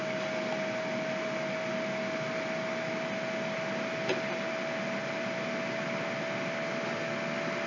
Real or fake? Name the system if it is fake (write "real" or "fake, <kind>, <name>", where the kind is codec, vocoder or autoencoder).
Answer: real